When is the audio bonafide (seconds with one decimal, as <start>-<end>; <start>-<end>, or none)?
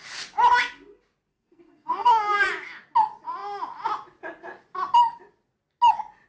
0.0-1.3; 2.5-6.3